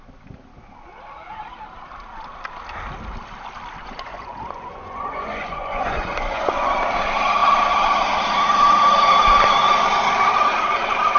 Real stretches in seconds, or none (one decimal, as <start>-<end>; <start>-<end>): 0.0-3.8; 6.7-11.2